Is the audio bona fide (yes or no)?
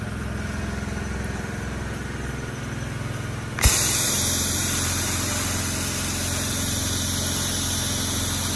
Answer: yes